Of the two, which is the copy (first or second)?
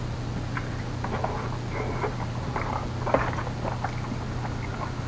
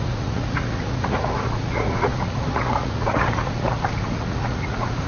second